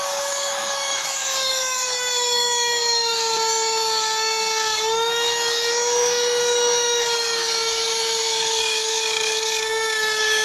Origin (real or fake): fake